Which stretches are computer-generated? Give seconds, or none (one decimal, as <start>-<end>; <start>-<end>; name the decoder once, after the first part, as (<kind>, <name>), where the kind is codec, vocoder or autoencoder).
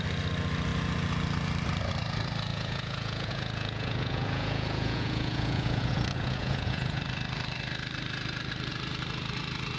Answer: 2.5-7.0 (vocoder, Vocos)